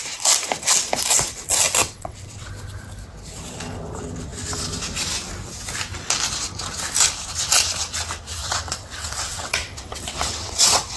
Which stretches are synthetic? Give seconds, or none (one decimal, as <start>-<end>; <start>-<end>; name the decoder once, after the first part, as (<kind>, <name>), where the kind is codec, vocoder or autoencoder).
1.8-2.5 (vocoder, WaveNeXt); 8.4-11.0